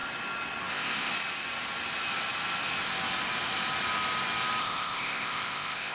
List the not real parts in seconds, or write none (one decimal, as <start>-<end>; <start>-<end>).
0.7-1.1; 4.6-5.9